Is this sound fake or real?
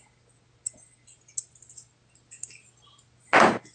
real